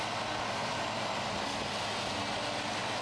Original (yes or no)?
yes